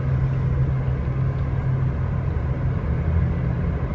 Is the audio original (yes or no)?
yes